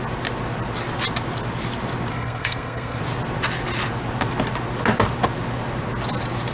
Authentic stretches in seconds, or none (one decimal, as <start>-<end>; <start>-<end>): 0.0-2.1; 3.0-6.5